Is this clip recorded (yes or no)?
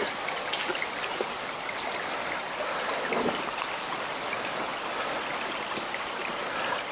yes